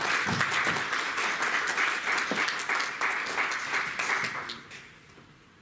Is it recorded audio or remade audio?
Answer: recorded